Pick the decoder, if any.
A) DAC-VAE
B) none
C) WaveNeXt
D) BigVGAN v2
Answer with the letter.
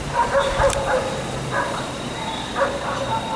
D